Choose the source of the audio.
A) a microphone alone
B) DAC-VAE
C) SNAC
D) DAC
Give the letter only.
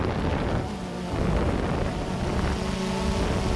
A